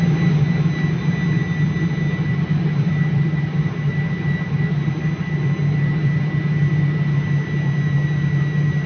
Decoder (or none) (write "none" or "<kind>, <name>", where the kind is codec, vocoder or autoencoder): none